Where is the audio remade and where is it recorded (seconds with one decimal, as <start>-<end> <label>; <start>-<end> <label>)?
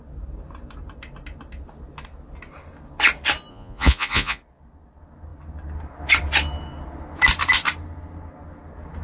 0.0-3.5 recorded; 3.5-4.4 remade; 4.4-9.0 recorded